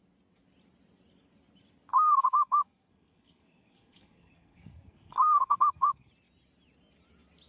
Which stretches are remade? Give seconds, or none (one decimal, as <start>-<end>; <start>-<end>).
1.9-6.1